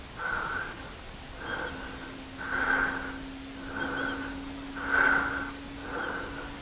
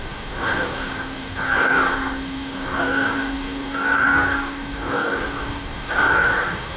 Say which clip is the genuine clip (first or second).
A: first